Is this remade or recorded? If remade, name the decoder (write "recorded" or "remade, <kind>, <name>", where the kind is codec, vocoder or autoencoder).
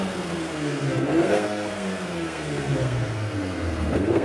remade, codec, SNAC